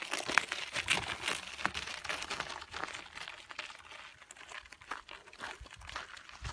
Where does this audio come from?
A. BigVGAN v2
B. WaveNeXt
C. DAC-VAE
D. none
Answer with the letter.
D